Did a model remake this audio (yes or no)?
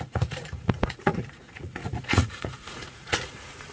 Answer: yes